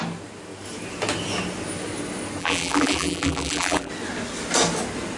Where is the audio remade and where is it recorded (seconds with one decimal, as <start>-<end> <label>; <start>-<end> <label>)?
0.0-2.4 recorded; 2.4-3.9 remade; 3.9-5.2 recorded